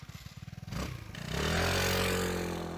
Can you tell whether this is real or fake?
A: real